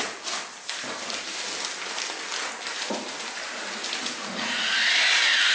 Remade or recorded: recorded